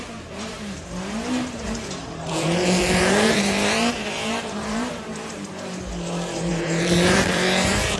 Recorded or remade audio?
remade